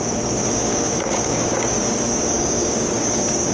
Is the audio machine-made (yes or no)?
yes